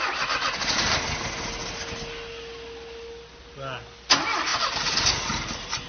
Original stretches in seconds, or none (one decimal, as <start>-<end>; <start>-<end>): 0.0-5.9